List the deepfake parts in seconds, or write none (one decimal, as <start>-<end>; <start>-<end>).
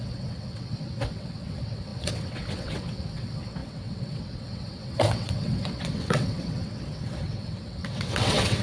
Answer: 0.0-8.6